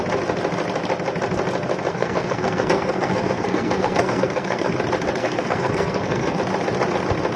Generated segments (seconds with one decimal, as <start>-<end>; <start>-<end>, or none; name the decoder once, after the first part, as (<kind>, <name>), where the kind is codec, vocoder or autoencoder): 1.9-4.7 (codec, SNAC); 5.2-6.4